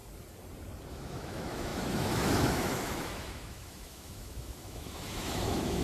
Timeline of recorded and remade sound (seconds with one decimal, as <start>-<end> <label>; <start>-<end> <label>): 0.0-0.9 recorded; 0.9-5.8 remade